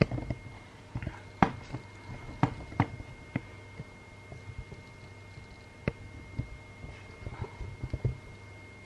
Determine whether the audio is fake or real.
real